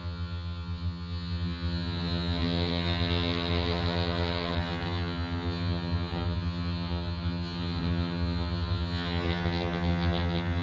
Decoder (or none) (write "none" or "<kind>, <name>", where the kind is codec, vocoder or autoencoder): vocoder, HiFi-GAN